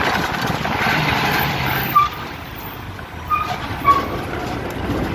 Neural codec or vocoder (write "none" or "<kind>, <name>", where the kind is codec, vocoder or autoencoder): none